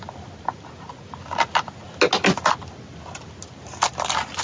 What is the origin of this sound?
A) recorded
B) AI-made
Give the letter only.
A